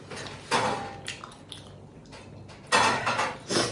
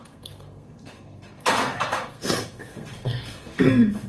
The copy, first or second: second